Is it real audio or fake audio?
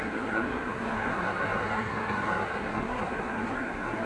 fake